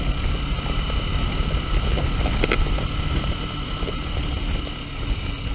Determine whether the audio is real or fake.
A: real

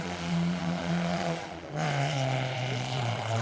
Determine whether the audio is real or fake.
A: fake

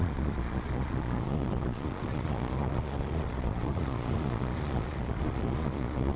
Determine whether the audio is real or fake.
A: fake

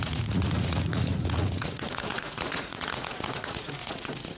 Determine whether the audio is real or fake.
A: fake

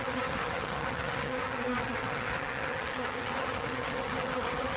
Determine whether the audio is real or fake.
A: fake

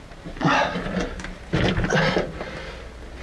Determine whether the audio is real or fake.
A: real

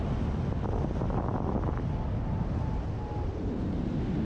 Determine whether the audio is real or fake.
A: real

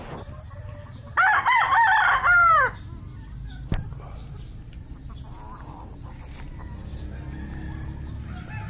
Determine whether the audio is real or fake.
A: real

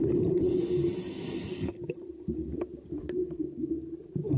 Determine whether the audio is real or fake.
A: real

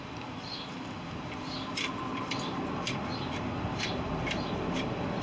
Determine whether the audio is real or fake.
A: real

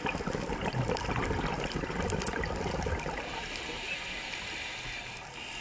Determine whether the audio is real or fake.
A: real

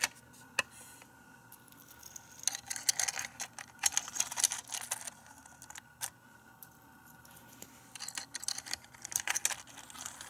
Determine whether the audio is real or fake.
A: real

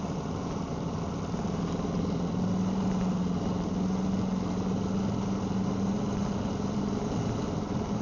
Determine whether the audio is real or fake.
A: real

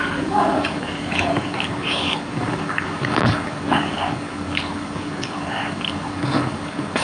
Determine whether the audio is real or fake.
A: fake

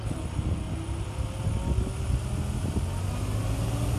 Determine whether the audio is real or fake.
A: real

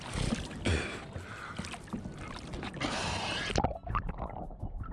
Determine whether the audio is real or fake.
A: real